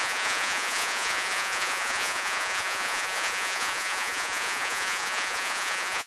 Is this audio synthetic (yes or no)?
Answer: yes